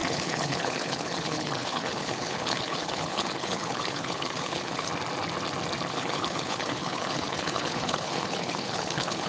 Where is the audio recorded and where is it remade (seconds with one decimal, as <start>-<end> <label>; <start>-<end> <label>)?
0.0-4.9 remade; 4.9-5.9 recorded; 5.9-9.3 remade